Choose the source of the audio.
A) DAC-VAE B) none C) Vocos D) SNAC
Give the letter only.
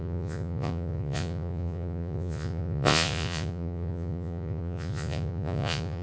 C